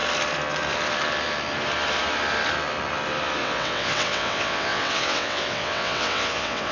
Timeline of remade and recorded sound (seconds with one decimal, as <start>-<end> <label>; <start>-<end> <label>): 0.0-3.4 recorded; 3.4-6.7 remade